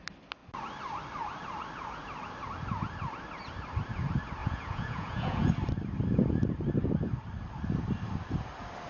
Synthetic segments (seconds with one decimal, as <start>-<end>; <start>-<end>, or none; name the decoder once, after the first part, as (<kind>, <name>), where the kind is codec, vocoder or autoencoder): 4.4-5.5 (vocoder, Vocos)